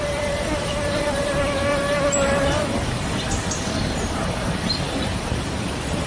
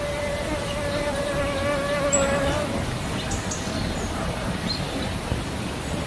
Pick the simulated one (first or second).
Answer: first